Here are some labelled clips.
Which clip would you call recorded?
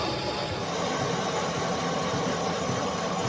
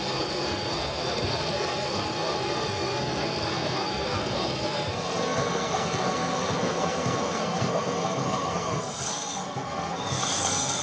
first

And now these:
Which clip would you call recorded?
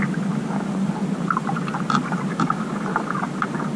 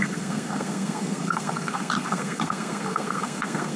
first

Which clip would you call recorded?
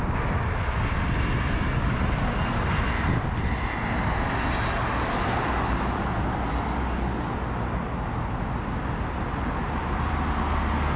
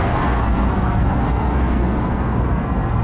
first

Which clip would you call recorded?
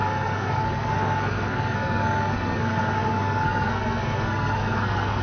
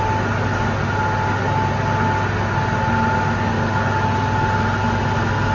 second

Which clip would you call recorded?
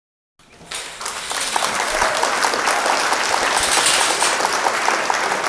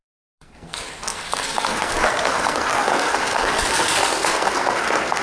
first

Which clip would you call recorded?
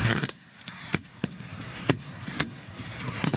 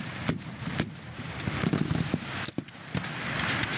second